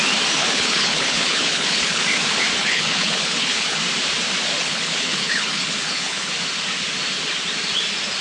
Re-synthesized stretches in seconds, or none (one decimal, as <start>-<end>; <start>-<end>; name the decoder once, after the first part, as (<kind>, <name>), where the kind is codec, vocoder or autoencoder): 0.4-2.0 (codec, HILCodec); 2.6-3.8; 4.6-6.3